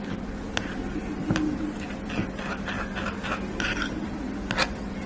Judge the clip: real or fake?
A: real